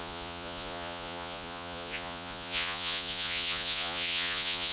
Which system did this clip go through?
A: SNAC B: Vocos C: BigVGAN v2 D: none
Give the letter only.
B